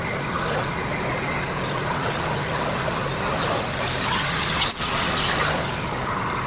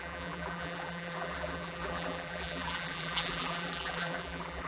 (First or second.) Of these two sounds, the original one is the first